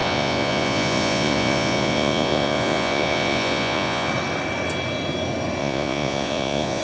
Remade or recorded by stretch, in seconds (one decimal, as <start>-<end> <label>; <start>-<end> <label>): 0.0-4.1 remade; 4.1-5.6 recorded; 5.6-6.8 remade